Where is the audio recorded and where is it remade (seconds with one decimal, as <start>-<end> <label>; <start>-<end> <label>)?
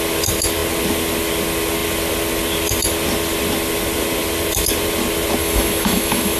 0.0-5.4 recorded; 5.4-6.4 remade